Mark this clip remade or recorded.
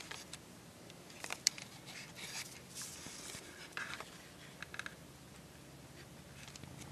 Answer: recorded